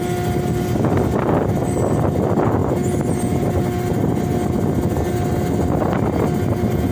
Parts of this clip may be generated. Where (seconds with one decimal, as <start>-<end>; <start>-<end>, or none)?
none